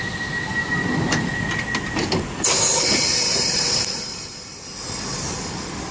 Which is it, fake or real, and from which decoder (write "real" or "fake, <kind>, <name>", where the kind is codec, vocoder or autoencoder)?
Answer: real